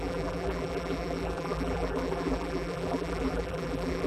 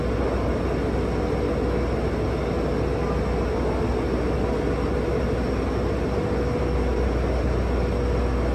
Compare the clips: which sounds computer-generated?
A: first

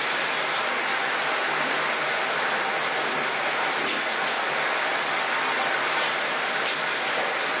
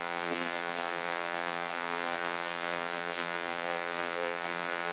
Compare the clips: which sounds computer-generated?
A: second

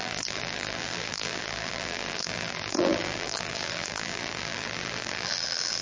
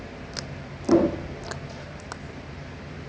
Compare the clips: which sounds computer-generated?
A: first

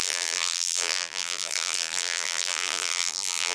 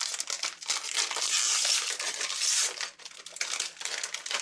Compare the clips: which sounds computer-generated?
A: first